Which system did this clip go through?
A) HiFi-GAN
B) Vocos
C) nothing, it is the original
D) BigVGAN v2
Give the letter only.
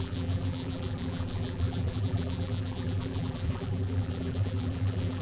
D